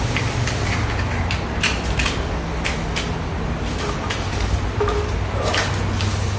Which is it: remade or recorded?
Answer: recorded